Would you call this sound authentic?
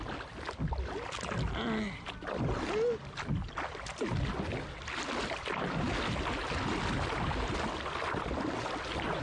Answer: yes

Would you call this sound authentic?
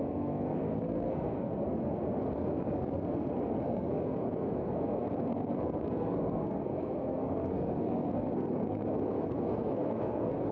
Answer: no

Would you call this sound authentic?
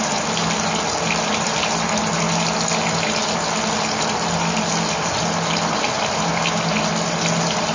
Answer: yes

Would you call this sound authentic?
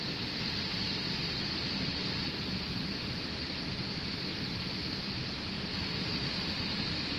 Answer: yes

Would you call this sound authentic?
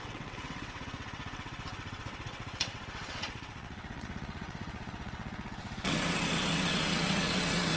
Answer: no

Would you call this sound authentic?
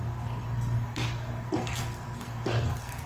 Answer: no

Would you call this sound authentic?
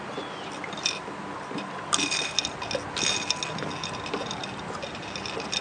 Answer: yes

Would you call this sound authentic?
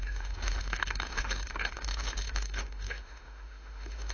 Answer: no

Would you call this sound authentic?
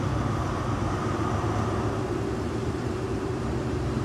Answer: no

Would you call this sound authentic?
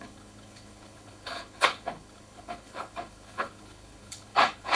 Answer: no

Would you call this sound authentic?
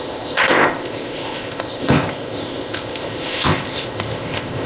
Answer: no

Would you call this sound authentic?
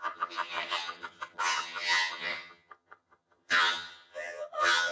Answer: no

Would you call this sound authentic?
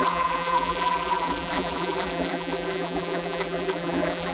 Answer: no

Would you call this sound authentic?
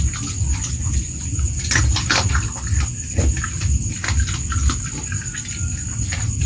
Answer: yes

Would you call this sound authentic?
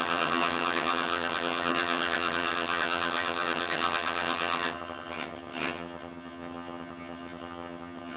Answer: no